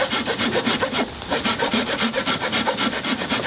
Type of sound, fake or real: real